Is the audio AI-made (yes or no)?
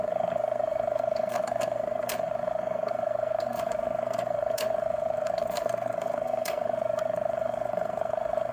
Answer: yes